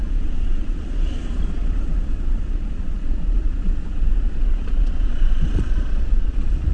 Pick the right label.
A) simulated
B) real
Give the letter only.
A